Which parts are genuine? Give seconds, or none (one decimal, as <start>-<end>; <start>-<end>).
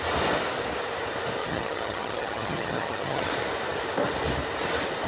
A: 0.0-1.4; 3.3-5.1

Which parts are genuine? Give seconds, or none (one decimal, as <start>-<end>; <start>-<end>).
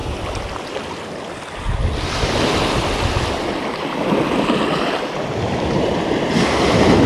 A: 0.0-7.1